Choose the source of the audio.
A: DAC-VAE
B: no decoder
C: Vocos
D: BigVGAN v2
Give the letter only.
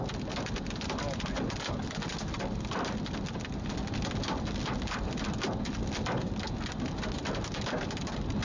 B